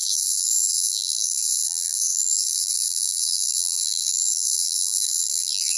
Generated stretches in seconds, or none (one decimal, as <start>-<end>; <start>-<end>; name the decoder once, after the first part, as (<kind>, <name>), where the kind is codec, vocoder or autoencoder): 0.0-5.8 (vocoder, BigVGAN v2)